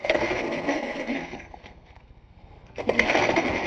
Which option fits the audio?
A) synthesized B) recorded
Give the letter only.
A